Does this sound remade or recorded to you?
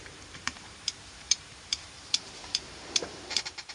remade